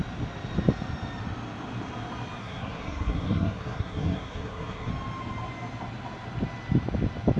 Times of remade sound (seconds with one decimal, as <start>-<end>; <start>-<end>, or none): 2.4-4.9